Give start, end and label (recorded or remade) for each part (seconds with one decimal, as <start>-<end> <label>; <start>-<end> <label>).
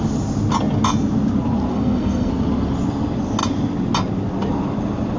0.0-1.7 recorded; 1.7-2.3 remade; 2.3-5.2 recorded